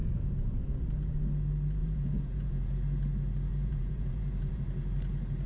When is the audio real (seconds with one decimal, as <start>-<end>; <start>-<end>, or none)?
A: 0.8-1.8; 2.7-3.5; 4.6-5.5